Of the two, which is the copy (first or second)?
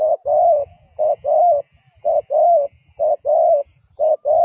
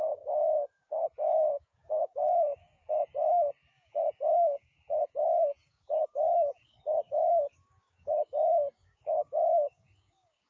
second